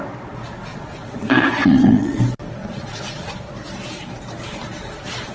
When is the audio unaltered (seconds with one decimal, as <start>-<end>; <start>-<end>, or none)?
0.0-0.7; 2.2-2.6; 3.3-5.3